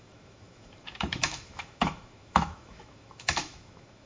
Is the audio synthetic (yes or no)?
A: yes